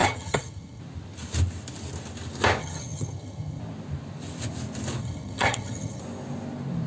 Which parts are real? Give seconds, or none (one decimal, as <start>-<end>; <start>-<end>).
0.8-2.6; 3.6-5.0; 6.0-6.9